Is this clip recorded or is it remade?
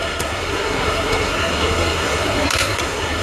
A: remade